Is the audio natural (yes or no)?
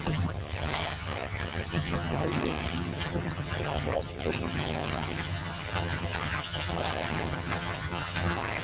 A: no